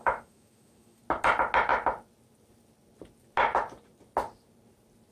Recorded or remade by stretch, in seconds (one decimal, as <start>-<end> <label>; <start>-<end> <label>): 0.0-1.0 remade; 1.0-5.1 recorded